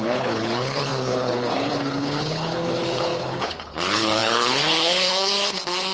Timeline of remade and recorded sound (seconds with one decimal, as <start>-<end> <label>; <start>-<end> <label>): 0.0-5.9 remade